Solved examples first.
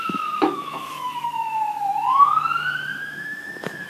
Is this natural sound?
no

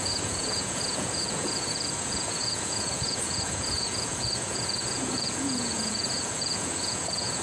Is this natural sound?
no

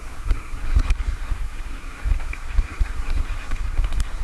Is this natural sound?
no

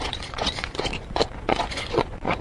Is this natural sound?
no